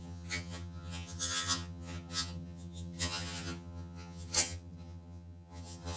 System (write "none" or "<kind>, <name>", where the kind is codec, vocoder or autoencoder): vocoder, HiFi-GAN